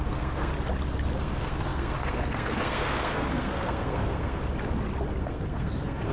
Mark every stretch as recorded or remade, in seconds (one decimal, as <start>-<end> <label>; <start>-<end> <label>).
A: 0.0-0.5 remade; 0.5-1.2 recorded; 1.2-4.4 remade; 4.4-5.2 recorded; 5.2-6.1 remade